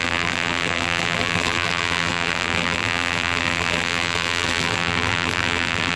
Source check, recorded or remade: remade